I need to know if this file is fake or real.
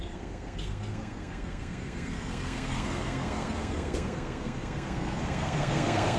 fake